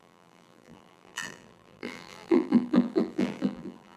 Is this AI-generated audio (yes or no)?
yes